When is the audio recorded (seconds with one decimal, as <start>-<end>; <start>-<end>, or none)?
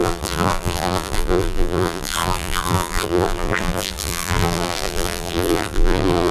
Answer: none